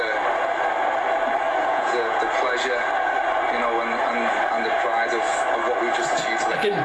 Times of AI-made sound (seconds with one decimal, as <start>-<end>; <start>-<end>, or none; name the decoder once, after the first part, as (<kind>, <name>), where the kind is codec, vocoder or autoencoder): 1.6-2.2 (vocoder, Vocos)